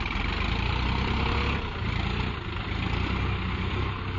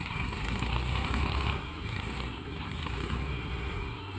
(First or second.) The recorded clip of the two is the first